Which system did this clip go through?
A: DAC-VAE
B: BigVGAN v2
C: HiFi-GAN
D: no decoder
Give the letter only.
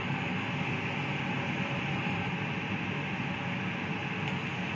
D